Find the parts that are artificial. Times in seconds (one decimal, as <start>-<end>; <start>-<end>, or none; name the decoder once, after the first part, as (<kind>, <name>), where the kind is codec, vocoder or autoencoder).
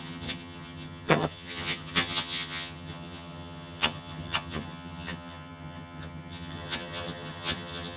0.0-8.0 (vocoder, HiFi-GAN)